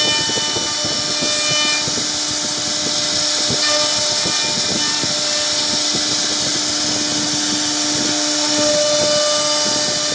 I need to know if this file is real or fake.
real